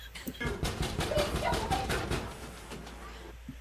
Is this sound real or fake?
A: fake